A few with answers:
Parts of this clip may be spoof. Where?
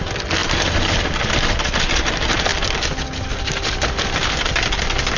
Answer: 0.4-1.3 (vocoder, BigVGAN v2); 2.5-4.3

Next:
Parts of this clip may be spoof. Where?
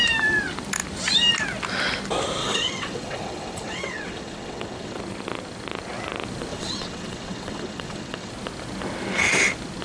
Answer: 2.4-5.0 (vocoder, WaveNeXt); 6.5-8.3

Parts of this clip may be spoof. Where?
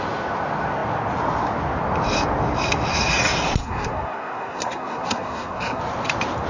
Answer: 3.6-5.8 (codec, SNAC)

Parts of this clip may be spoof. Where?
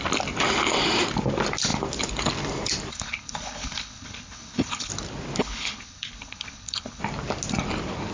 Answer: 2.9-4.9 (codec, HILCodec); 5.4-7.0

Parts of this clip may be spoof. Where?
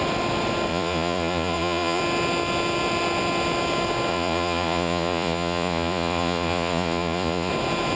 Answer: 0.7-2.0 (vocoder, Vocos); 4.1-7.5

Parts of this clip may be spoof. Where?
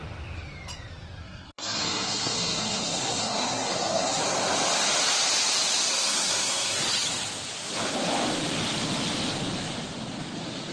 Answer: 1.2-4.2 (codec, SNAC); 5.9-6.8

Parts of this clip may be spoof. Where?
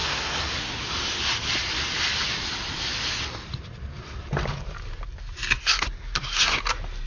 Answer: 0.0-0.6 (codec, SNAC); 5.6-6.6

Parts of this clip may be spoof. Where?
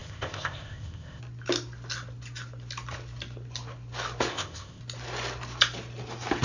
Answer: 0.0-1.2 (codec, ZipCodec); 4.3-4.8